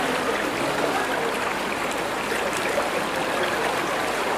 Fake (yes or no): no